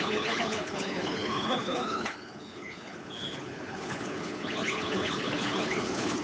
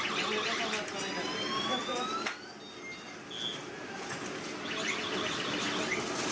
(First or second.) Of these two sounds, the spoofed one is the first